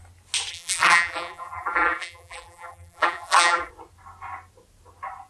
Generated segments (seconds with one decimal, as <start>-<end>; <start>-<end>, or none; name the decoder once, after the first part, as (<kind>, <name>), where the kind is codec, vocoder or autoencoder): 0.5-3.7 (vocoder, BigVGAN v2)